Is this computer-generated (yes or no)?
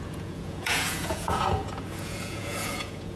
yes